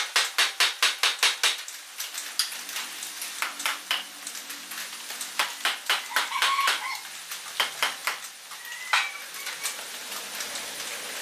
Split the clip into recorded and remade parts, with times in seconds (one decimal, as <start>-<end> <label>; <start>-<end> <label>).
0.0-11.2 recorded